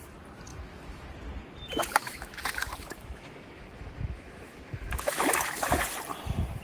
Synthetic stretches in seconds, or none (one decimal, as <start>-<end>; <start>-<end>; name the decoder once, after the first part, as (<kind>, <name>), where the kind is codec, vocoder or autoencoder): 0.5-1.1 (autoencoder, DAC-VAE); 1.8-5.8